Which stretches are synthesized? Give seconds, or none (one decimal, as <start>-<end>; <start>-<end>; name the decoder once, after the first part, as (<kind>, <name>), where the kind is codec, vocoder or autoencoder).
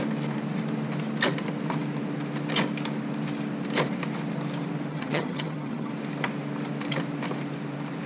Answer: 4.9-5.9 (vocoder, HiFi-GAN)